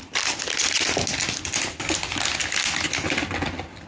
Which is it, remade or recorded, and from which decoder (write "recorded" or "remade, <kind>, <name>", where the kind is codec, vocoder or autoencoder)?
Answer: recorded